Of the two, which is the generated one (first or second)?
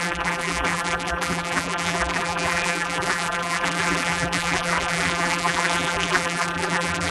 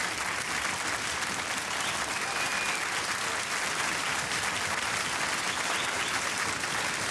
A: first